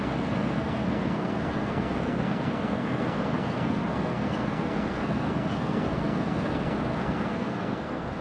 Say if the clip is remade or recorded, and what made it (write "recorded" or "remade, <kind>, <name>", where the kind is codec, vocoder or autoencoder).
remade, codec, SNAC